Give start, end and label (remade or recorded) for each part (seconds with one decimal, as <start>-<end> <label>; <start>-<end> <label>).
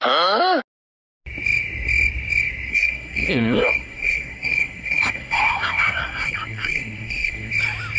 0.0-2.7 recorded; 2.7-7.5 remade; 7.5-8.0 recorded